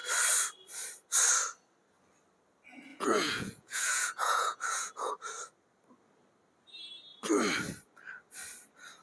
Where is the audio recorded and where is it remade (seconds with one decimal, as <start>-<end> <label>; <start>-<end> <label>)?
0.0-2.9 recorded; 2.9-5.1 remade; 5.1-9.0 recorded

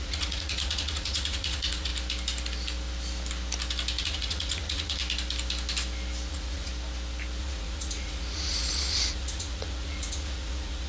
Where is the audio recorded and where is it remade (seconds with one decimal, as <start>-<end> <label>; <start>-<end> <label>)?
0.0-1.9 remade; 1.9-4.0 recorded; 4.0-5.0 remade; 5.0-6.3 recorded; 6.3-6.7 remade; 6.7-7.4 recorded; 7.4-10.9 remade